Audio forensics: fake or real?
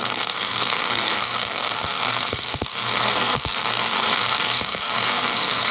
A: fake